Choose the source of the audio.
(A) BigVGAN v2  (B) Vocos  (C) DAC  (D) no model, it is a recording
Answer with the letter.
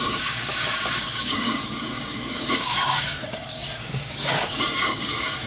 C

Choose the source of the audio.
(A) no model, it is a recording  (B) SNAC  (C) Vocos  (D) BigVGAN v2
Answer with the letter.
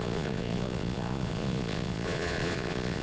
C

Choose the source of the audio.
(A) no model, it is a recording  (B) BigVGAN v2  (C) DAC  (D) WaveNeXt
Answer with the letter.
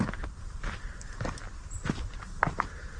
A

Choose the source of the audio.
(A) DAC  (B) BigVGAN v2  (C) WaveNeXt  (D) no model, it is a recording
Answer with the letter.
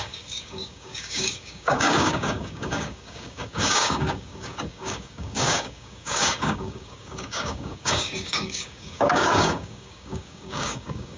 A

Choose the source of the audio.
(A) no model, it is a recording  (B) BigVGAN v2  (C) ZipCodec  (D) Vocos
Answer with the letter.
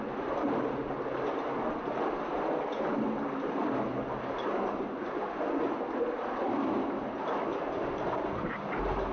A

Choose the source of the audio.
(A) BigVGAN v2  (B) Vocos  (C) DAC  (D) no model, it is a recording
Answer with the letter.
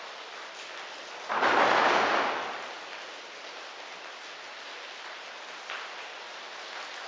D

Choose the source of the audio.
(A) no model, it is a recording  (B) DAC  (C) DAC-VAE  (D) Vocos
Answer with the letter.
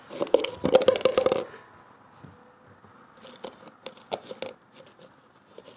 A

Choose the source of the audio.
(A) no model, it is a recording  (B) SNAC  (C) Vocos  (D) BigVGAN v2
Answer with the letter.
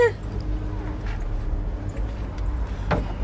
A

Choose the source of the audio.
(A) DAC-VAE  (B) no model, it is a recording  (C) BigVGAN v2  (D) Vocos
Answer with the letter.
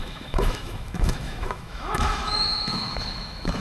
A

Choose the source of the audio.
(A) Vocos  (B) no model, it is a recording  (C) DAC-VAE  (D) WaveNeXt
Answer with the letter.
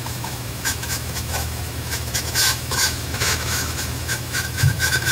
C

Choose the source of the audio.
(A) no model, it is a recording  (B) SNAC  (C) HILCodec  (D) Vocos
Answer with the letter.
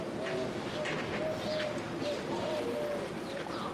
A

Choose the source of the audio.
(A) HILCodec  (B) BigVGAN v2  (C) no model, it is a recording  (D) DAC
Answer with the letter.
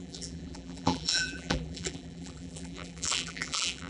B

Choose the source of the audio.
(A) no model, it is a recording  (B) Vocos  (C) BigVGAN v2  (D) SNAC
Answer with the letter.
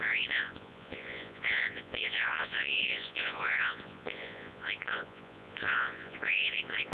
B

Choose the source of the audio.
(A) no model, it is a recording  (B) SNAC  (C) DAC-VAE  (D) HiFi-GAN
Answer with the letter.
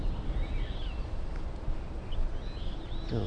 A